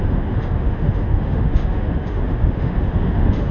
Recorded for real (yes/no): no